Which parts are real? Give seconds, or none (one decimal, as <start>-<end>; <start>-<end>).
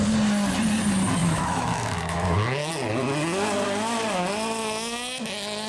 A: 0.0-1.2; 2.7-4.6; 5.3-5.7